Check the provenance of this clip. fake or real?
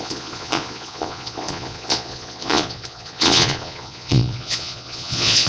fake